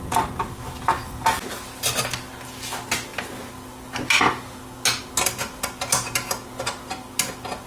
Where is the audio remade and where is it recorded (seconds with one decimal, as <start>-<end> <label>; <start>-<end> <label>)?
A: 0.0-7.7 recorded